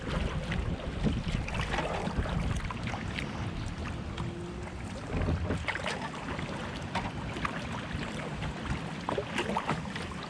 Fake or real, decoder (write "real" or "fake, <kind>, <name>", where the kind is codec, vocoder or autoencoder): real